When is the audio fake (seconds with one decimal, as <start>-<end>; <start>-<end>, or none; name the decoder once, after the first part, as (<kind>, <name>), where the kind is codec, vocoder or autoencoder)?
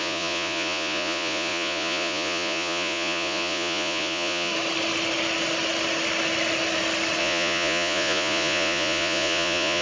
0.0-4.5 (vocoder, Vocos); 7.2-9.8